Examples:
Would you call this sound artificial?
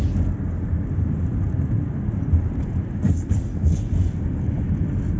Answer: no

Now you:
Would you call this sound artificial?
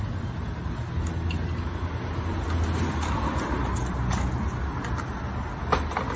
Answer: no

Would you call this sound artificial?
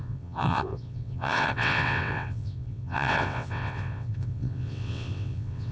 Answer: yes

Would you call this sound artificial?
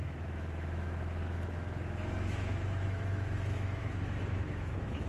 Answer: yes